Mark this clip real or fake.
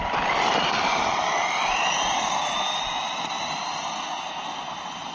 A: real